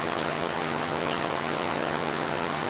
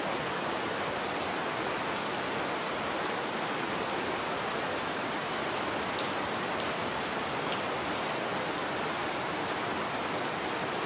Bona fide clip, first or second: second